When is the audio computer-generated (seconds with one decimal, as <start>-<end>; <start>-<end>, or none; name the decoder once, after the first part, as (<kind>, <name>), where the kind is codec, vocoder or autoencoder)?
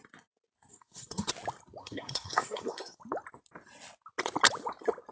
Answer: 0.7-1.3 (codec, SNAC); 1.8-3.0